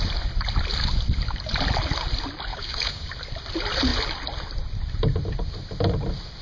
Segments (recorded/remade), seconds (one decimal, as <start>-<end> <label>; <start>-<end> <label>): 0.0-2.5 recorded; 2.5-3.1 remade; 3.1-6.4 recorded